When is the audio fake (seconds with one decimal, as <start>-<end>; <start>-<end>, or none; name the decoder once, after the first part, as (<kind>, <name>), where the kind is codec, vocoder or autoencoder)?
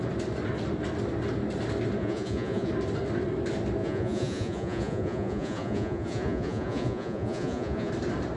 2.0-2.7 (vocoder, Vocos); 3.8-7.9